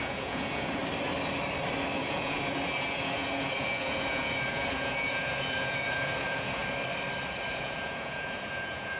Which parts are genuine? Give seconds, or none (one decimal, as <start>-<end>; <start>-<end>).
0.8-2.0; 6.6-7.5

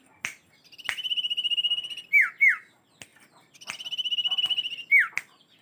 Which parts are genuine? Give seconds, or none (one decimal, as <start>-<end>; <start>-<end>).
0.0-5.6

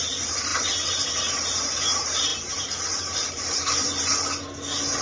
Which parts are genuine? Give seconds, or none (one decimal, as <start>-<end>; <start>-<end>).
0.5-1.1; 4.1-5.0